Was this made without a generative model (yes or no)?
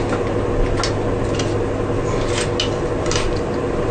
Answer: yes